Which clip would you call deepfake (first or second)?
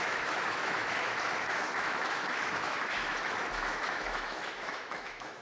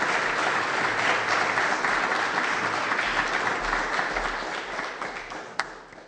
first